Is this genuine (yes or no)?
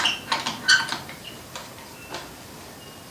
yes